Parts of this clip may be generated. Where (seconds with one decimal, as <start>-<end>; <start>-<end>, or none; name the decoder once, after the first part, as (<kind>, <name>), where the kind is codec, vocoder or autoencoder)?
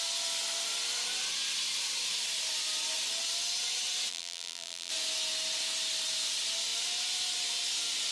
4.1-4.9 (vocoder, BigVGAN v2)